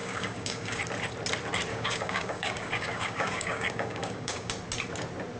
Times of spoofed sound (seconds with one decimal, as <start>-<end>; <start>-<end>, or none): 0.0-0.8; 1.7-4.5

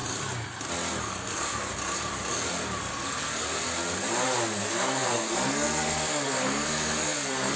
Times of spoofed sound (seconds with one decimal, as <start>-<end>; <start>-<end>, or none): 1.0-1.7; 2.8-3.4; 4.6-7.6

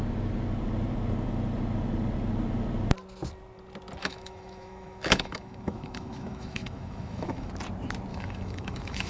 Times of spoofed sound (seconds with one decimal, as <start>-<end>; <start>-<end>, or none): 4.0-7.5; 8.1-9.1

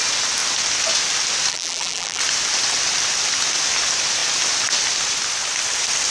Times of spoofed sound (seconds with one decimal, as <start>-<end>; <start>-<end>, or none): 1.5-2.2

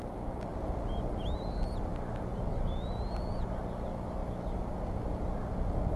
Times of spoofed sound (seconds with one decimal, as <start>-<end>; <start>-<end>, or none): none